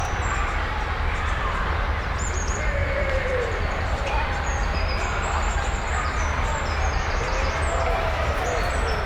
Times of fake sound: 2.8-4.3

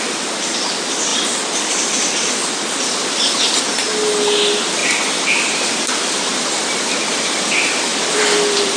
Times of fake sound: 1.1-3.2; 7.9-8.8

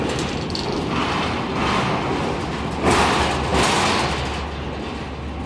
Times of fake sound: 1.0-1.6

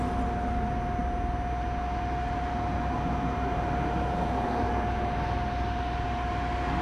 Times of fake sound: none

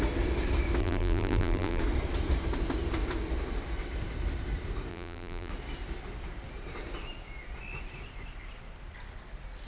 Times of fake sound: 0.8-1.8; 4.9-5.5

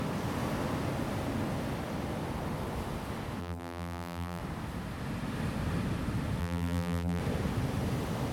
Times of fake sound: 3.4-4.4; 6.4-7.2